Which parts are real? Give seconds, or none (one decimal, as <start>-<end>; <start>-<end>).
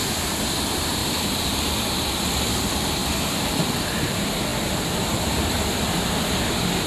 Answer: 0.0-1.0; 1.7-3.0; 3.6-6.9